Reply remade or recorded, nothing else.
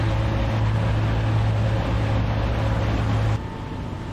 recorded